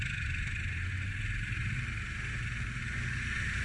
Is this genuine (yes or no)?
yes